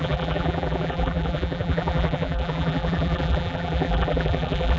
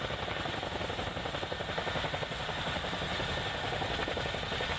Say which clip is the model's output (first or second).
first